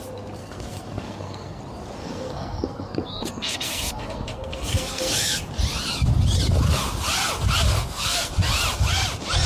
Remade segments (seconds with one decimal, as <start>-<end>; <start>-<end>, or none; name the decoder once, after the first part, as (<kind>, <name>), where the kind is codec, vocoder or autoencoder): 0.4-1.6 (codec, SNAC); 2.0-5.4; 7.7-8.3